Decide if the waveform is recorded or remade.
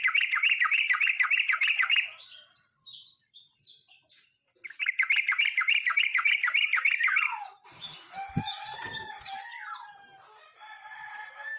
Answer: remade